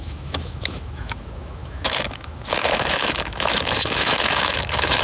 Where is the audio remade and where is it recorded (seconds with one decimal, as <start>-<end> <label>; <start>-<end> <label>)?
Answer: 0.0-5.0 remade